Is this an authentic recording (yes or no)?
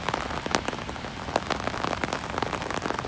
yes